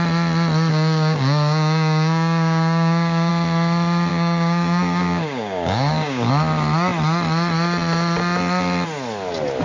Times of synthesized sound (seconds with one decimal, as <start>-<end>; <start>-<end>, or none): 0.7-3.3; 4.1-6.3